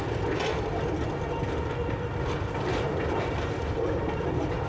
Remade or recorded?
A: recorded